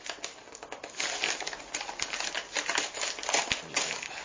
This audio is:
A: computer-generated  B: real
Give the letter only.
B